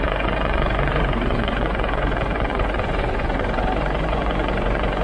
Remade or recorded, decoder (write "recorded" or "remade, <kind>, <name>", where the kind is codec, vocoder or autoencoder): remade, vocoder, Vocos